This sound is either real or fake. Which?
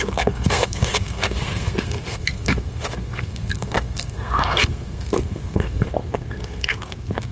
fake